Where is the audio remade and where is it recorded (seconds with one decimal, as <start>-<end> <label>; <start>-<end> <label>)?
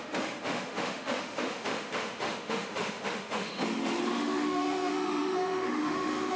0.0-3.6 remade; 3.6-4.1 recorded; 4.1-6.4 remade